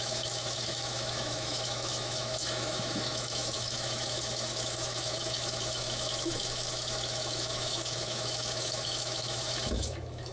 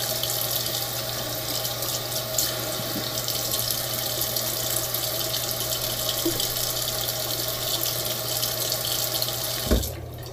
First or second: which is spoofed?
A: first